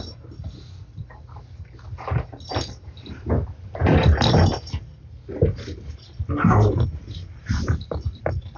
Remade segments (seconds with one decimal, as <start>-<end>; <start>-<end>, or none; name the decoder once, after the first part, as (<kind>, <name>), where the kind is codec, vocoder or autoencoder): none

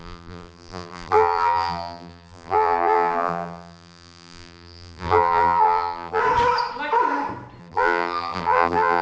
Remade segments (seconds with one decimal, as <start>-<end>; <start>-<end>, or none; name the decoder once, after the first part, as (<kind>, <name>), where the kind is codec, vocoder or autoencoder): 0.0-6.2 (vocoder, BigVGAN v2); 7.6-9.0

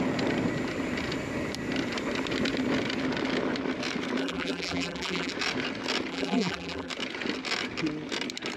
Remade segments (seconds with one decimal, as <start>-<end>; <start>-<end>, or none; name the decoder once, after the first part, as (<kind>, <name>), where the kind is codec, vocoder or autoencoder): 4.2-5.3 (vocoder, BigVGAN v2); 6.1-6.9

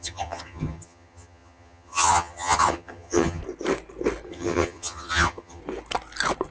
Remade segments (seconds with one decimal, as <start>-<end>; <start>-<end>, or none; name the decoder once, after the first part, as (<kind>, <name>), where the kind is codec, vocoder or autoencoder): 0.0-3.4 (vocoder, HiFi-GAN); 4.3-5.6

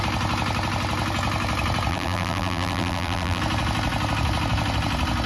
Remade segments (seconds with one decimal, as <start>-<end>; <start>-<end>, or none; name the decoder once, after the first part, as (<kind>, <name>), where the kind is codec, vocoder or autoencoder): 1.9-3.4 (vocoder, BigVGAN v2)